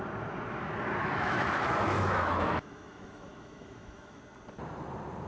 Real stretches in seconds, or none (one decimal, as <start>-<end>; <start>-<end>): 0.0-1.0; 4.2-5.3